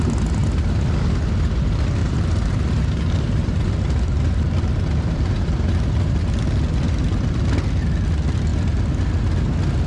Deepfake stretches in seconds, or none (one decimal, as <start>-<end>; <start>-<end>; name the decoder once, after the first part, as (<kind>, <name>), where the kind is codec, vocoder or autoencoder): 2.0-6.1 (vocoder, BigVGAN v2)